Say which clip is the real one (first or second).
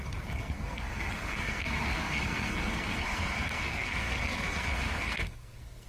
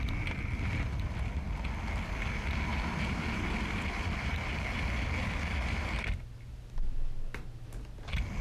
second